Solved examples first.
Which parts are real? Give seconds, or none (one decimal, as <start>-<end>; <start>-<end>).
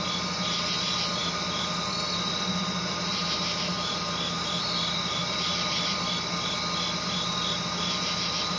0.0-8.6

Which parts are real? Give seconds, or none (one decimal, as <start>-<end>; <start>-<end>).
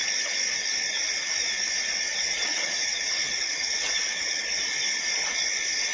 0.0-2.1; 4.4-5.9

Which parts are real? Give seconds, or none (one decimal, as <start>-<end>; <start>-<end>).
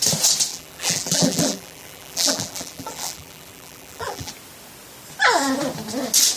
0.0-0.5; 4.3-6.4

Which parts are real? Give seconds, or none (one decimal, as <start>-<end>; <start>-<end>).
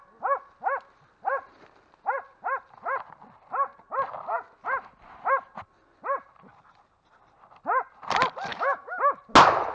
0.0-8.5; 9.2-9.7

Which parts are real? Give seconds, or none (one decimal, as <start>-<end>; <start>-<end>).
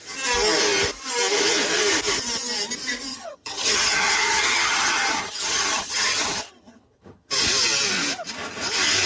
0.0-3.1; 7.3-9.1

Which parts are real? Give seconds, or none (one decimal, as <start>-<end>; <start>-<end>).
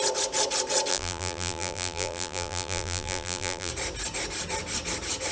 0.0-0.9; 3.7-5.3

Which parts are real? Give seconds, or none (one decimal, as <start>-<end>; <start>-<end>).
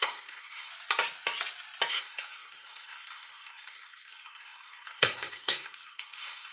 0.7-1.9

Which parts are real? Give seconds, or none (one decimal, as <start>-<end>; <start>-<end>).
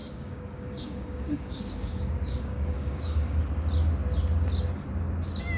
3.4-5.6